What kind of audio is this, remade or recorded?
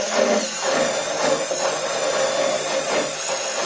recorded